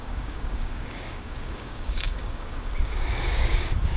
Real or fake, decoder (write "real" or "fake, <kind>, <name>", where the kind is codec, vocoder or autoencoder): fake, codec, DAC